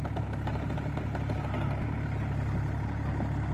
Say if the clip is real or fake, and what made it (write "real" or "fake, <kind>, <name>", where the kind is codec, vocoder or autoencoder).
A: real